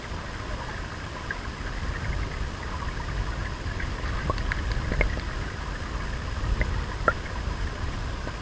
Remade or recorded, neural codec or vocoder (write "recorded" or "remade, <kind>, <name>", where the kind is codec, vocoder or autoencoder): recorded